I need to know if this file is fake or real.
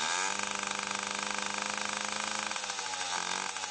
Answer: real